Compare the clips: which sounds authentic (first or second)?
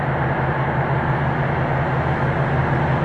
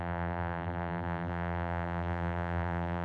first